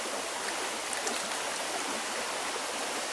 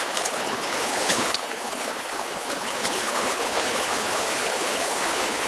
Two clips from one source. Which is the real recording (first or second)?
first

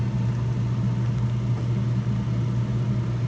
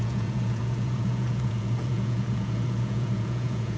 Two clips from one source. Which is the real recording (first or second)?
first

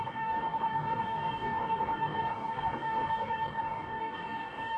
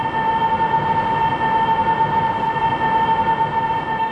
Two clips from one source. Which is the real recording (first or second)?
second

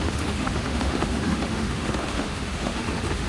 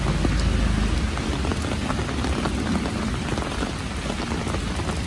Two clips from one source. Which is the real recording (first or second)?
second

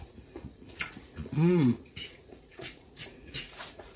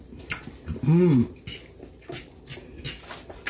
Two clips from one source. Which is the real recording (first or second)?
second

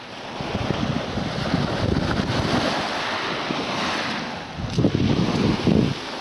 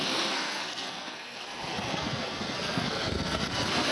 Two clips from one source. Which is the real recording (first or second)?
first